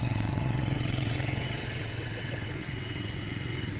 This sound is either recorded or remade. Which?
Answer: remade